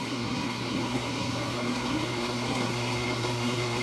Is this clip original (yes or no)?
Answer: no